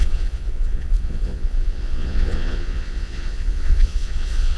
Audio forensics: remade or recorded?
remade